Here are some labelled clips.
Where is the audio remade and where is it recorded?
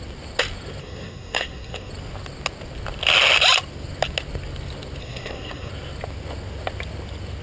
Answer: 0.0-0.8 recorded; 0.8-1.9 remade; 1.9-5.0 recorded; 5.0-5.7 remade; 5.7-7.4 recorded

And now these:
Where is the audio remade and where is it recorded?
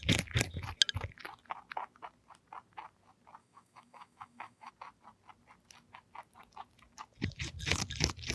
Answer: 0.0-3.4 recorded; 3.4-4.7 remade; 4.7-8.3 recorded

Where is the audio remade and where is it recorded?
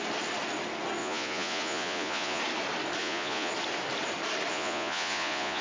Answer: 0.0-1.0 recorded; 1.0-2.4 remade; 2.4-3.0 recorded; 3.0-3.5 remade; 3.5-4.5 recorded; 4.5-5.6 remade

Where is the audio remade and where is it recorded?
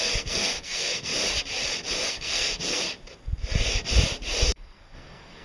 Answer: 0.0-1.1 remade; 1.1-2.1 recorded; 2.1-2.8 remade; 2.8-4.5 recorded; 4.5-5.4 remade